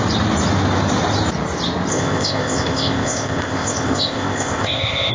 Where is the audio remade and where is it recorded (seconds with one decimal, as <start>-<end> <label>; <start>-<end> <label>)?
0.0-1.9 recorded; 1.9-5.1 remade